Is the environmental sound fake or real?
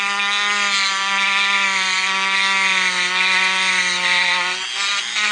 real